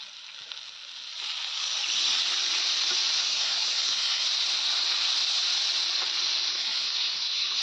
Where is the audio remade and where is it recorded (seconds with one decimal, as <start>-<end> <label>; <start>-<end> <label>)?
0.0-3.2 recorded; 3.2-4.3 remade; 4.3-6.5 recorded; 6.5-7.6 remade